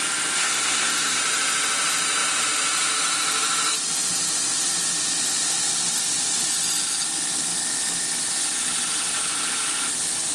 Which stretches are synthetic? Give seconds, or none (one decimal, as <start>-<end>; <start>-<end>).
0.4-1.2